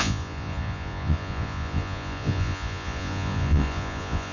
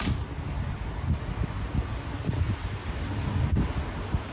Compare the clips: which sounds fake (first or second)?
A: first